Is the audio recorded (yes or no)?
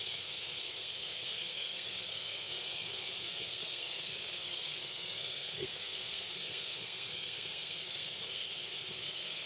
no